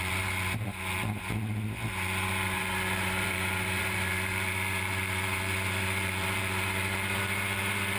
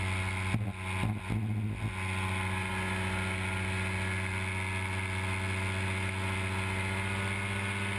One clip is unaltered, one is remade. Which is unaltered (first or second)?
second